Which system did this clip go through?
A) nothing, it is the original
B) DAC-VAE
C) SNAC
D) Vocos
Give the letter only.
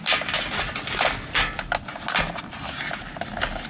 A